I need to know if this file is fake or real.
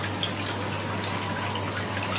real